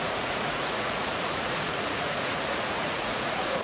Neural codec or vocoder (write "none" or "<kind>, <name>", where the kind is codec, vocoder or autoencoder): vocoder, Vocos